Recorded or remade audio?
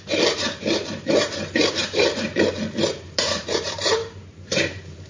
remade